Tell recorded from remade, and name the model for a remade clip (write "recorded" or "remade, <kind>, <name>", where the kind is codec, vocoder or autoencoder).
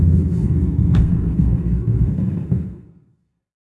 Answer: remade, codec, SNAC